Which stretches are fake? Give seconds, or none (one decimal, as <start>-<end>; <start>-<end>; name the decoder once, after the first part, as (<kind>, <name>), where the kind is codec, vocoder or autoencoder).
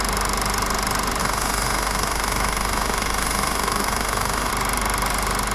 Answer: 1.2-4.5 (autoencoder, DAC-VAE)